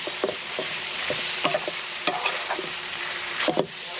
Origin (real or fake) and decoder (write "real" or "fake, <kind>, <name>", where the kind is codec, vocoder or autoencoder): fake, vocoder, BigVGAN v2